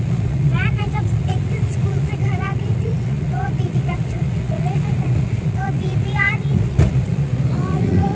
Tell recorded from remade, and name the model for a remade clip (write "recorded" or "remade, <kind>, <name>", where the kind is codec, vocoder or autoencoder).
remade, vocoder, Vocos